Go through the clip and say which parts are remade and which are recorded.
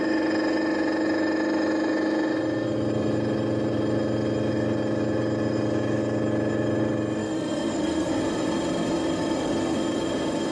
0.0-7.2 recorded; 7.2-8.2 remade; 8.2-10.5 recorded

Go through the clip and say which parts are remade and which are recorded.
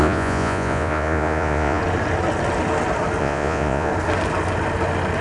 0.0-1.8 remade; 1.8-3.2 recorded; 3.2-3.9 remade; 3.9-5.2 recorded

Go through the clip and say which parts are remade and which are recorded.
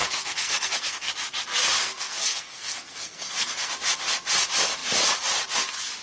0.0-1.1 remade; 1.1-1.8 recorded; 1.8-3.7 remade; 3.7-6.0 recorded